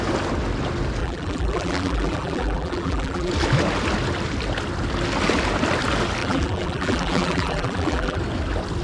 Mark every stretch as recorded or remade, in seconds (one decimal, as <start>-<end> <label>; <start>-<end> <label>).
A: 0.0-1.0 recorded; 1.0-3.3 remade; 3.3-6.2 recorded; 6.2-8.2 remade; 8.2-8.8 recorded